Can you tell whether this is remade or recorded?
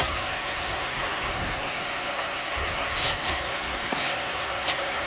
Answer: remade